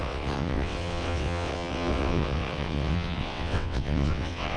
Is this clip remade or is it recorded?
remade